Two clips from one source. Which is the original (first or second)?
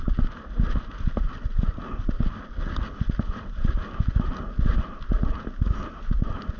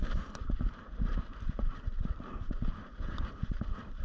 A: first